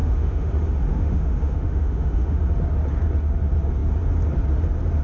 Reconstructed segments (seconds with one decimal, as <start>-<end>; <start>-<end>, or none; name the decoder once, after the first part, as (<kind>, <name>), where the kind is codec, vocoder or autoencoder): 0.0-0.5 (autoencoder, DAC-VAE); 0.9-2.4